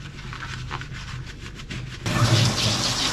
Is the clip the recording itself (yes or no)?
yes